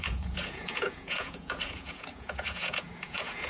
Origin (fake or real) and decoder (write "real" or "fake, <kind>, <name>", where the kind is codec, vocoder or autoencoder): fake, vocoder, Vocos